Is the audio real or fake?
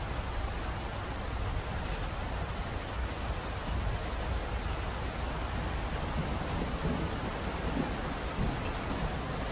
real